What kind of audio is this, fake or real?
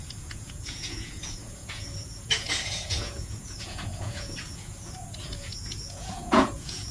fake